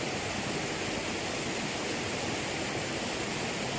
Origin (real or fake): real